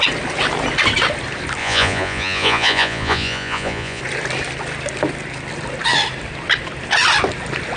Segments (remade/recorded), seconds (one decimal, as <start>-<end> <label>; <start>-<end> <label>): 0.0-1.6 recorded; 1.6-4.0 remade; 4.0-7.8 recorded